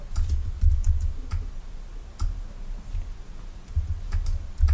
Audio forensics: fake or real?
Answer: real